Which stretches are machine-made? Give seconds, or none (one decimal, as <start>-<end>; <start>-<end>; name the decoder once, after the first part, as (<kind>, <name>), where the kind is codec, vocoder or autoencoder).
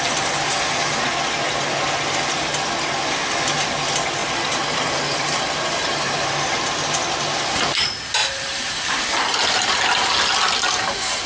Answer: 4.2-6.3 (vocoder, BigVGAN v2); 8.2-9.4